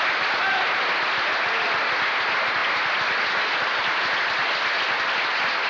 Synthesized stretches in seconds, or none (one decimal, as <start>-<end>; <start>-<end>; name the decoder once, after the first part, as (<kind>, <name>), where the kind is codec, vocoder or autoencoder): none